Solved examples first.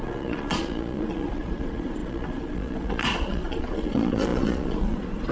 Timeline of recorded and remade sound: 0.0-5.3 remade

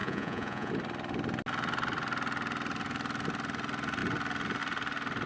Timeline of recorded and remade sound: 0.0-0.7 remade; 0.7-5.3 recorded